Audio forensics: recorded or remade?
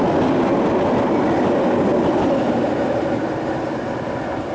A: recorded